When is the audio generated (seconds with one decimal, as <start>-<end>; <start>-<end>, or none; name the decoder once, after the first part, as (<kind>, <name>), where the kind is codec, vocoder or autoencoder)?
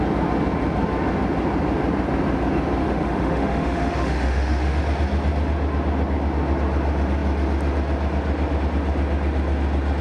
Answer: 2.8-4.8 (autoencoder, DAC-VAE)